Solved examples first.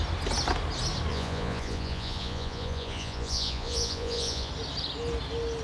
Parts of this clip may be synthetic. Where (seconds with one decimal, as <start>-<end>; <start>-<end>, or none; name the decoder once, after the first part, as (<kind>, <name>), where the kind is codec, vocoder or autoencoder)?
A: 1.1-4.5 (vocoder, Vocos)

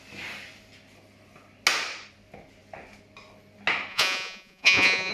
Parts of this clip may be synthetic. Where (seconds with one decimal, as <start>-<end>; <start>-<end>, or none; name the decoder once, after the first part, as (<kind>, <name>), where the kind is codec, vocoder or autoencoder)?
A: 3.9-5.1 (vocoder, Vocos)

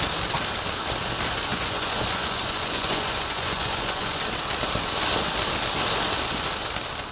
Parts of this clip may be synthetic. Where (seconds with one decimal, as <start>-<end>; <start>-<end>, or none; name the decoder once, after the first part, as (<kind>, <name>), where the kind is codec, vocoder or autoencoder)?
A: 1.5-4.2 (vocoder, Vocos)